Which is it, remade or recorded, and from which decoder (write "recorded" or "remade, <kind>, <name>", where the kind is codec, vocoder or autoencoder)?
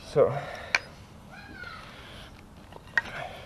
recorded